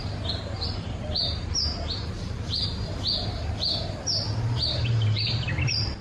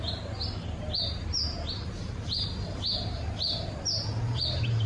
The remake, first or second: first